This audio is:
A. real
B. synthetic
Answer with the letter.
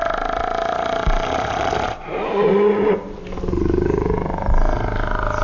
A